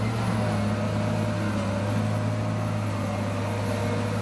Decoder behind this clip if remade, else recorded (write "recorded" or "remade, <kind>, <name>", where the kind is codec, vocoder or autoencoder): recorded